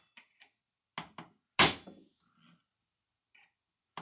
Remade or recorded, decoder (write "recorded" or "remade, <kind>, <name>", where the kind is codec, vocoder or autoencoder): recorded